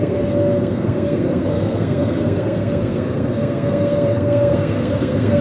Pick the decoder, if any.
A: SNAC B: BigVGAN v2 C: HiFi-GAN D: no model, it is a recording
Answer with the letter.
A